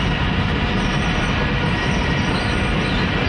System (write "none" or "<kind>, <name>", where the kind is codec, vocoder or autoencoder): none